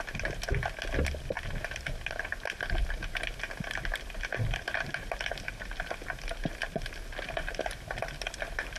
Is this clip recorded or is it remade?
recorded